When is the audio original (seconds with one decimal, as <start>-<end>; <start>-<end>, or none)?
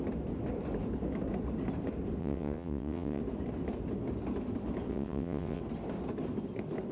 0.0-2.2; 3.2-4.9; 5.6-6.9